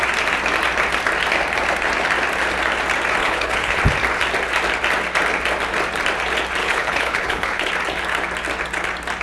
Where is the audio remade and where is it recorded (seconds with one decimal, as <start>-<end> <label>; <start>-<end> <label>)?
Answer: 0.0-3.2 recorded; 3.2-3.8 remade; 3.8-6.6 recorded; 6.6-7.7 remade; 7.7-9.2 recorded